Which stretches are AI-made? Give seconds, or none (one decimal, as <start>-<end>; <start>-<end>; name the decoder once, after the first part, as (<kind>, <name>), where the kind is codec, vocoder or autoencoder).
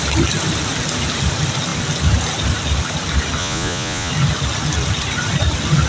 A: 3.4-4.1 (vocoder, Vocos)